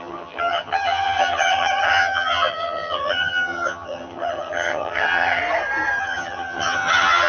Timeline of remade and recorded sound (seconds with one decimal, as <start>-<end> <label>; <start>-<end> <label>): 0.0-5.4 remade; 5.4-6.0 recorded; 6.0-7.3 remade